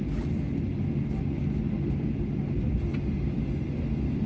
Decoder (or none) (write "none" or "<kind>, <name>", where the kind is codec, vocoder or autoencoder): none